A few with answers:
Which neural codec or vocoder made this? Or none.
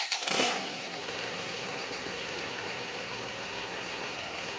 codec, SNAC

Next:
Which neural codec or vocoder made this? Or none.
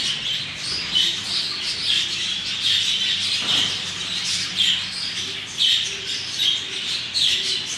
none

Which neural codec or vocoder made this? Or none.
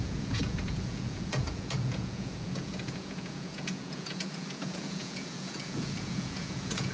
vocoder, Vocos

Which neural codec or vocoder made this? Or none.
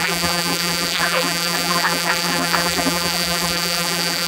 vocoder, BigVGAN v2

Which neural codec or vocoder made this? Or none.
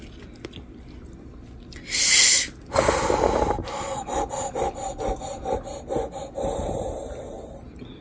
none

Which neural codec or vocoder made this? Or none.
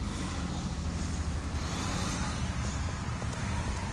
none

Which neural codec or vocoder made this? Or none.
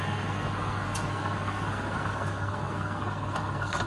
codec, SNAC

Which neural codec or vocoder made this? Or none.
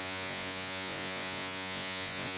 vocoder, Vocos